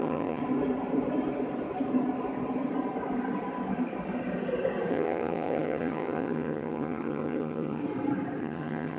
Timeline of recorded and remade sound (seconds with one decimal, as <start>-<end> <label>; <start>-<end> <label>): 0.0-0.4 remade; 0.4-4.9 recorded; 4.9-7.8 remade; 7.8-8.4 recorded; 8.4-9.0 remade